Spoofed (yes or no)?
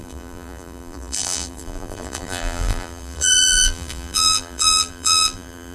yes